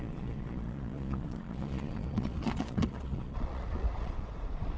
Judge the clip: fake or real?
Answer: fake